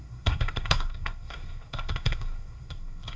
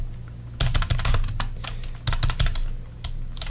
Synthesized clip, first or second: first